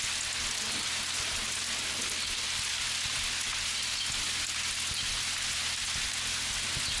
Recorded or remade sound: recorded